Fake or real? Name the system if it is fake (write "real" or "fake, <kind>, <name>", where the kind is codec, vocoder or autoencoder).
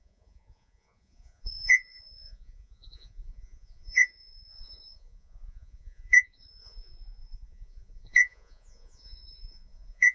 fake, vocoder, Vocos